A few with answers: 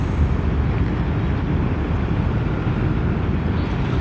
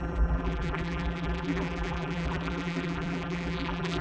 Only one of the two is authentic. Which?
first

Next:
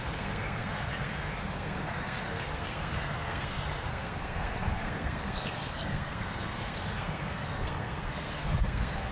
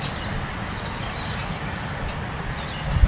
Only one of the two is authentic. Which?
second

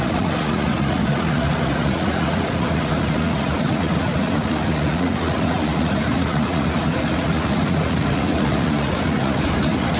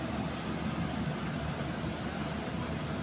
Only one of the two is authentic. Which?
second